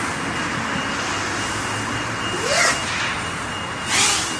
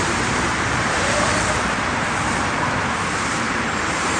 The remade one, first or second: second